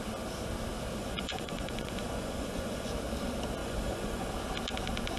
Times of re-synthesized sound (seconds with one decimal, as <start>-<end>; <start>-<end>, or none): 1.0-2.9; 3.6-4.3